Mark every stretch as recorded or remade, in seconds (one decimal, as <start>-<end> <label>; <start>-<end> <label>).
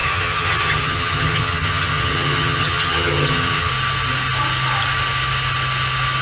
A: 0.0-3.7 remade; 3.7-6.2 recorded